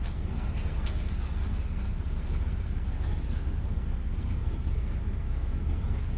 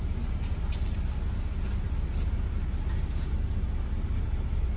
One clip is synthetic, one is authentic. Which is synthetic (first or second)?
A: first